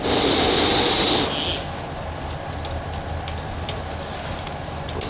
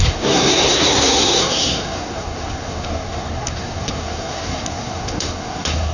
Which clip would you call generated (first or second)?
second